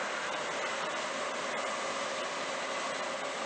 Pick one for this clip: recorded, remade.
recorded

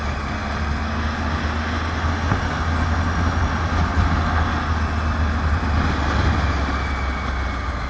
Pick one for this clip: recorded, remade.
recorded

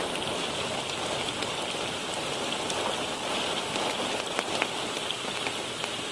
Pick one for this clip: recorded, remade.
recorded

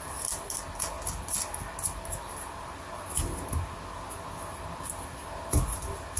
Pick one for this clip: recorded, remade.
recorded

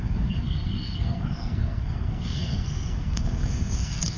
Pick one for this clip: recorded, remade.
remade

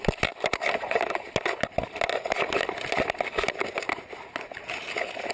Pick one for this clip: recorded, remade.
recorded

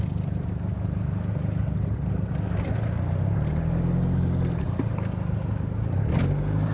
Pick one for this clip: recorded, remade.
recorded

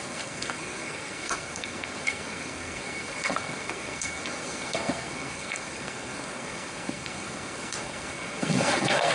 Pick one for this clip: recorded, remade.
remade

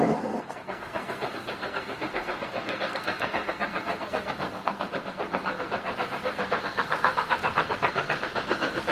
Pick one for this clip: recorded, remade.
remade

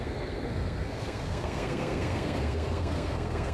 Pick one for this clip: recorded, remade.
remade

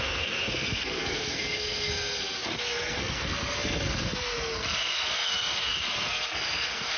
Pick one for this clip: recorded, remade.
remade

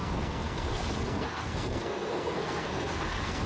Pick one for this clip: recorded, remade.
remade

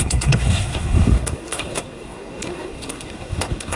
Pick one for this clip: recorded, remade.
remade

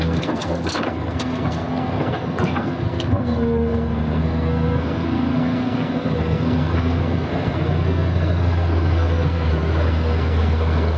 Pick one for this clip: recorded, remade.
remade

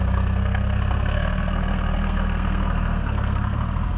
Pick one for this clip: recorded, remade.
remade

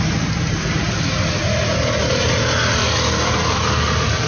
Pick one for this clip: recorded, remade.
recorded